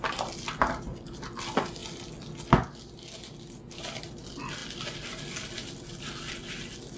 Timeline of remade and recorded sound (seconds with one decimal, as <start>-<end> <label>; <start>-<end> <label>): 0.0-7.0 recorded